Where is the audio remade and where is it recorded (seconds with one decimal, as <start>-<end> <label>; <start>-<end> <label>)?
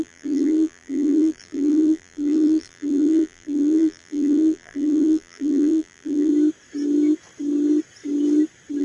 0.0-6.3 remade; 6.3-8.8 recorded